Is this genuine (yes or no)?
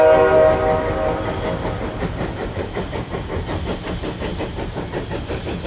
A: yes